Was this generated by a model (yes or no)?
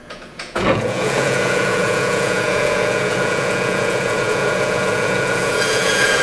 yes